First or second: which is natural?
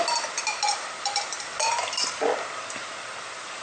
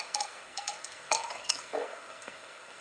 first